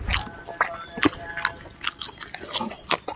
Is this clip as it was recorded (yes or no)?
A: yes